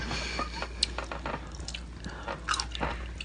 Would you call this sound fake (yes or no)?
no